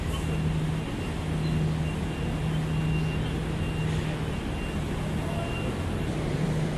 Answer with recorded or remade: recorded